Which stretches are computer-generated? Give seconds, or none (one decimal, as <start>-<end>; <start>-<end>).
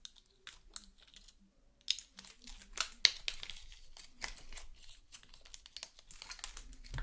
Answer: none